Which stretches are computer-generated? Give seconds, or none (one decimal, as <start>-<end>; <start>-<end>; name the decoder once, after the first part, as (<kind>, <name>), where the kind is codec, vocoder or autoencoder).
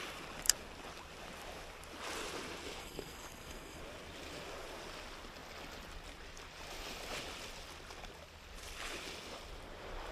2.8-3.8 (codec, SNAC)